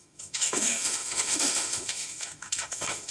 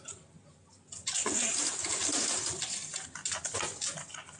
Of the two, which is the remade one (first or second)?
first